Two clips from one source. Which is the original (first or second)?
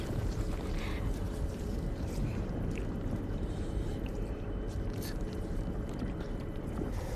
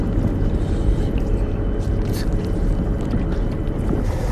second